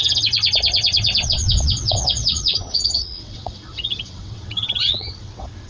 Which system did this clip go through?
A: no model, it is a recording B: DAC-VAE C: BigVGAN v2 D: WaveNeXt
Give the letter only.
D